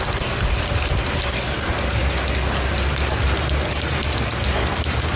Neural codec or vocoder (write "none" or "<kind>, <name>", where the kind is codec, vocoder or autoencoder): none